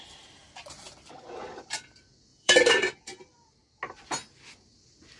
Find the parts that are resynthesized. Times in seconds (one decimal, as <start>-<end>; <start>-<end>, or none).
2.3-3.5

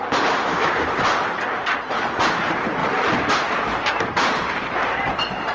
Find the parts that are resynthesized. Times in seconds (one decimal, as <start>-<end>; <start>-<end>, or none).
0.0-2.8; 3.9-5.5

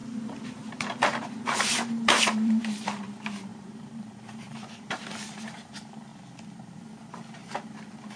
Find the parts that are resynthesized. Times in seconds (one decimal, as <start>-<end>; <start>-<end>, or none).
0.0-6.1; 6.7-8.2

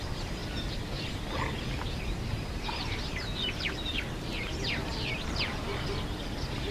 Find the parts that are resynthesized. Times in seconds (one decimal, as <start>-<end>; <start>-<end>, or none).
0.0-0.4; 2.2-3.1; 5.2-5.7

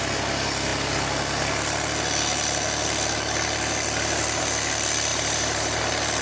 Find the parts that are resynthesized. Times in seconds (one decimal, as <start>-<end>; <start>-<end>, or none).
5.1-5.8

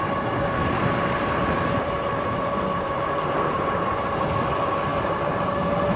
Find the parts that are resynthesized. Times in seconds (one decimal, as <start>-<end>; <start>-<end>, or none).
0.6-4.1; 4.9-5.5